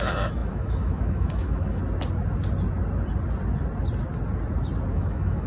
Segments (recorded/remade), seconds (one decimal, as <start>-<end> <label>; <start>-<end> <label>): 0.0-1.8 remade; 1.8-4.9 recorded; 4.9-5.5 remade